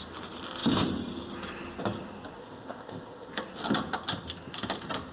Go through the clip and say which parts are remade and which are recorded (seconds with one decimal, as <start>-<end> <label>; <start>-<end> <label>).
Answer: 0.0-2.4 recorded; 2.4-3.3 remade; 3.3-5.1 recorded